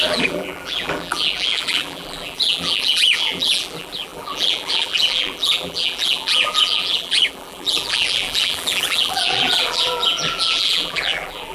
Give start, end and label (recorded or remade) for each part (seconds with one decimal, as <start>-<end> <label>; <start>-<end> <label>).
0.0-11.5 remade